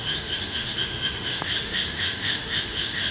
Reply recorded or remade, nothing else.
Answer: remade